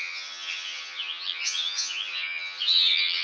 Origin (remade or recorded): remade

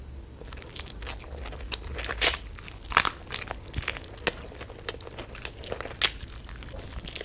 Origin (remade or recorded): recorded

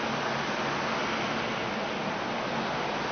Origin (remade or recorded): recorded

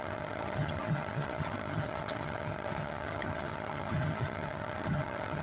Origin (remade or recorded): remade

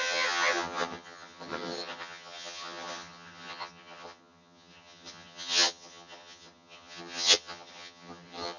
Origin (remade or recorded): remade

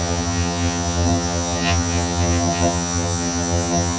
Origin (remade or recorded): remade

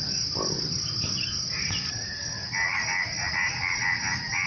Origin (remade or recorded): recorded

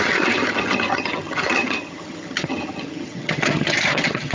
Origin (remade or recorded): remade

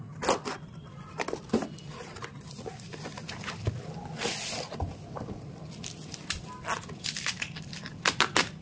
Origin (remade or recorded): recorded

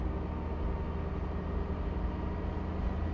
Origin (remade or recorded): recorded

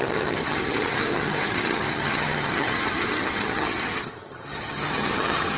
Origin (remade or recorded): remade